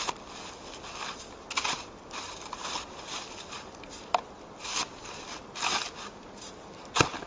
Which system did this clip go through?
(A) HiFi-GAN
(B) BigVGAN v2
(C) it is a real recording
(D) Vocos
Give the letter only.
C